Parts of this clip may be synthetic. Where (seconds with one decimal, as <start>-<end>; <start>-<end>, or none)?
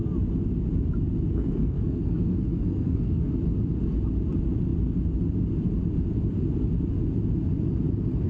1.3-3.3